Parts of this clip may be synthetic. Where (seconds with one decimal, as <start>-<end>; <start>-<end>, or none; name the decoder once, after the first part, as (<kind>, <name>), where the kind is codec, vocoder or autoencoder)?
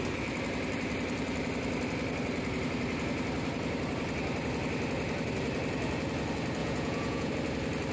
6.6-7.3 (vocoder, Vocos)